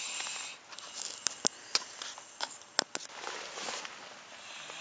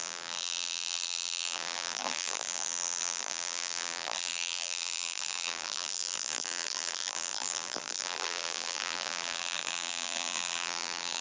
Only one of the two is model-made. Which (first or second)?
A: second